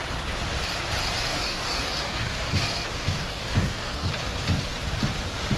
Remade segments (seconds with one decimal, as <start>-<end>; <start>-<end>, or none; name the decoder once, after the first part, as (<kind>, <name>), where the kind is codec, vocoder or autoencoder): 1.3-2.5 (codec, DAC); 3.0-4.1